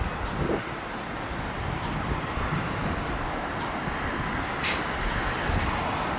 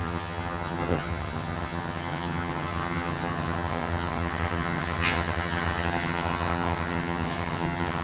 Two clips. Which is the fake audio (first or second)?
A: second